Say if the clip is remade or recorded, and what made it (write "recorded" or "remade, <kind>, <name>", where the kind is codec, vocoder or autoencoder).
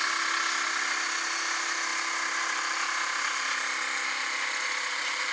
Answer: recorded